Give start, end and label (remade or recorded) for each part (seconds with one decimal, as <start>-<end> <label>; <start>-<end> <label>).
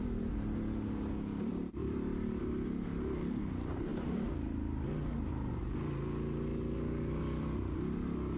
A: 0.0-1.8 recorded; 1.8-2.4 remade; 2.4-8.4 recorded